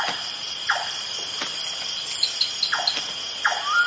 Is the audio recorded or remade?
recorded